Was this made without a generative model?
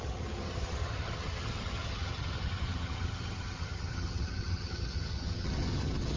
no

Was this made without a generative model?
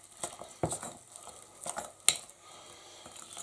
yes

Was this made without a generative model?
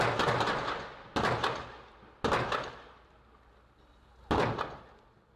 yes